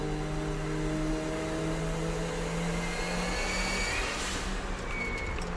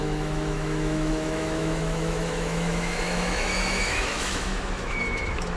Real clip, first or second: first